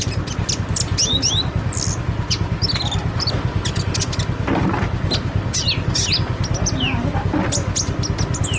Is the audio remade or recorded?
recorded